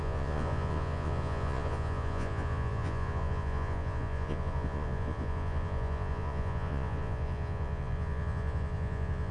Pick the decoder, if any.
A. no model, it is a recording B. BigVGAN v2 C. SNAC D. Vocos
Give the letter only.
D